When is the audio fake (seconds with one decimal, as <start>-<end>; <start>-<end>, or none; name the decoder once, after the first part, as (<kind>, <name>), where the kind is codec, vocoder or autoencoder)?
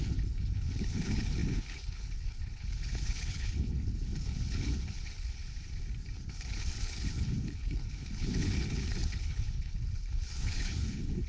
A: 0.0-5.4 (codec, HILCodec); 6.3-11.3